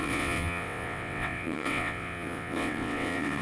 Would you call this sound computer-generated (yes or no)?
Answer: yes